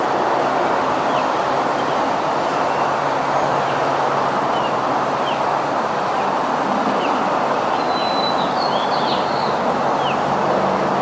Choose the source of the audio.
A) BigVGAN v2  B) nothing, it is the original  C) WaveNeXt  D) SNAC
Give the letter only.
B